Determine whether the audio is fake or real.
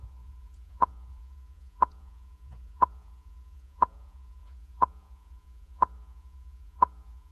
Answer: fake